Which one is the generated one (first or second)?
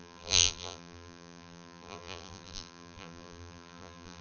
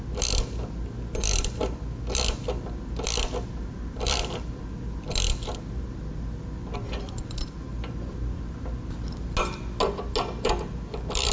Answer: first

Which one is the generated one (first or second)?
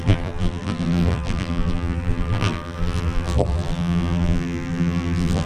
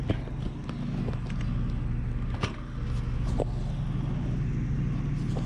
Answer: first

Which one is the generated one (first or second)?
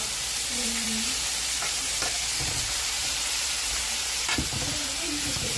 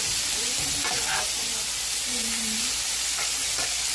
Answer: first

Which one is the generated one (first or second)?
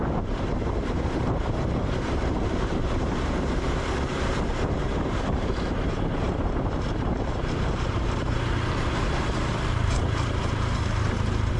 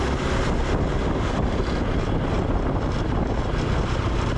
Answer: first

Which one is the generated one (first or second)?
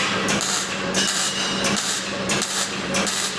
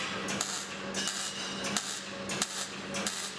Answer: first